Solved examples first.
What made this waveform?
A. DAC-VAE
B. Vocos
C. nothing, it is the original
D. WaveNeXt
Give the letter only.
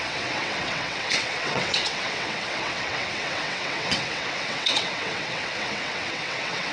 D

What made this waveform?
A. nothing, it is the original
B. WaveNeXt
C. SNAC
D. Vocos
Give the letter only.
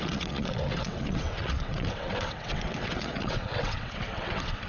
B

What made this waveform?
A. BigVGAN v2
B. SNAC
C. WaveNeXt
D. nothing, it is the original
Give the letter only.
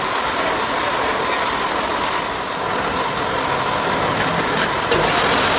D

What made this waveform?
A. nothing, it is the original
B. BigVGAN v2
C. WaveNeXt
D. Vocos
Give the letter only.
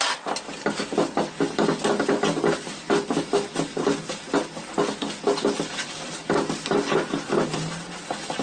A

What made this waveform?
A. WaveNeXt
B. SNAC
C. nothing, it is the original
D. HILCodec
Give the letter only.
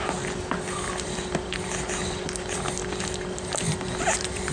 C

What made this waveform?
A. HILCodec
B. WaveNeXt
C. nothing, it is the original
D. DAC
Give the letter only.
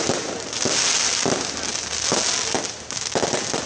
C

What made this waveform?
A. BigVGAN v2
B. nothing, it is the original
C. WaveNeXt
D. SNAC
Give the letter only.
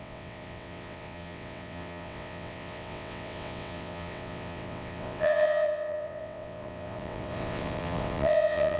C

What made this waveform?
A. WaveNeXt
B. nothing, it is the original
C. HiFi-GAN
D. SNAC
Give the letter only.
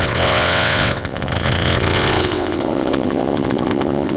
A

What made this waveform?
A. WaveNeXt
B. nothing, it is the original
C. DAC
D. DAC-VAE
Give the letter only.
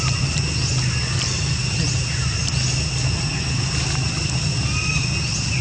B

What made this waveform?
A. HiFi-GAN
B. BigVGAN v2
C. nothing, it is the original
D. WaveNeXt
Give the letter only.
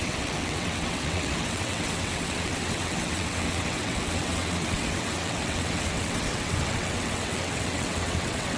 D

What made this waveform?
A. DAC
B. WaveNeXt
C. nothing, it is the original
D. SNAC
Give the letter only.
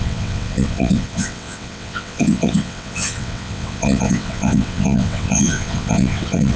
B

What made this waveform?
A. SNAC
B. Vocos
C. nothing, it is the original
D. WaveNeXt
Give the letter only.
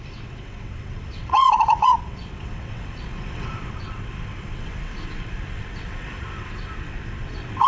D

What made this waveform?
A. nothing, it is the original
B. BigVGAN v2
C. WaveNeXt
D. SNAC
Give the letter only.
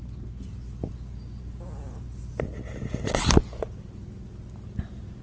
A